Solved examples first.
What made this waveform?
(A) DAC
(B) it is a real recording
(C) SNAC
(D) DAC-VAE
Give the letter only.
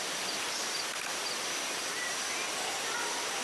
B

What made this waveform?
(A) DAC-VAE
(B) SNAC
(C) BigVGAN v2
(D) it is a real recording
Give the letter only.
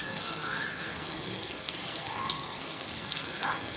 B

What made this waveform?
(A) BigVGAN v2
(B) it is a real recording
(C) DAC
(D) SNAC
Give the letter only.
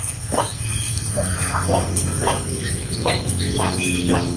D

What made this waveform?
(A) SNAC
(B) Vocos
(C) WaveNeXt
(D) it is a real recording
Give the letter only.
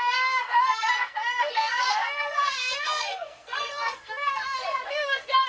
A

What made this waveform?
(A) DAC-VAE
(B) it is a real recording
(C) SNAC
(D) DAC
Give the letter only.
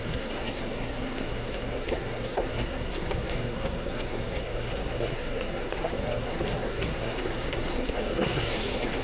C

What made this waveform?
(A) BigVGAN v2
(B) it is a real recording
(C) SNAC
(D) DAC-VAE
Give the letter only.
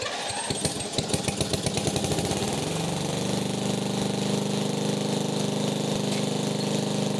B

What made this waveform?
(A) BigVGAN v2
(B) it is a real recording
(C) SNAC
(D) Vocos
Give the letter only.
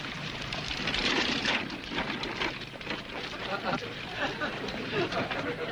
B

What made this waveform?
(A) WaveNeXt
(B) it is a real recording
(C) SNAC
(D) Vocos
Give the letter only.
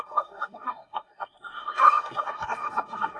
C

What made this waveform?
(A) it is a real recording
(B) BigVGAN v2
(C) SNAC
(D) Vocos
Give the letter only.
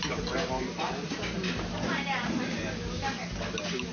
A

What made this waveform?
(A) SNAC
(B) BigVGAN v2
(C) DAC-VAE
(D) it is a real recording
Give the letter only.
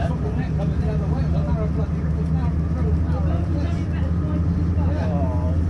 D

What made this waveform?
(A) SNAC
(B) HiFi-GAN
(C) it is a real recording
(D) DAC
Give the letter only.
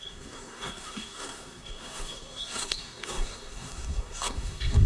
A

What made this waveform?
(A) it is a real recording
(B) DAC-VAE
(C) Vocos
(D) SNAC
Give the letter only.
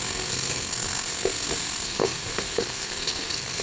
D